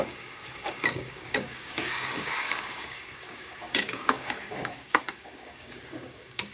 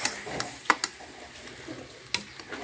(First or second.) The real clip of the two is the second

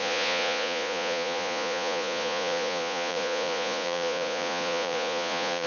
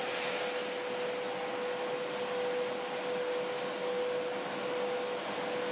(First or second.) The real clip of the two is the second